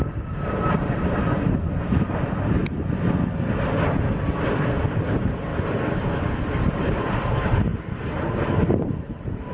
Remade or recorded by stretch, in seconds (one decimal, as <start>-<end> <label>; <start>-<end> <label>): 0.0-2.6 remade; 2.6-4.9 recorded; 4.9-5.5 remade; 5.5-6.6 recorded; 6.6-9.5 remade